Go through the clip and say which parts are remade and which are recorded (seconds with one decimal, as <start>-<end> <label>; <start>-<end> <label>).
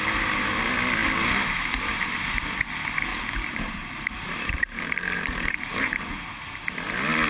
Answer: 0.0-3.1 recorded; 3.1-6.0 remade; 6.0-7.3 recorded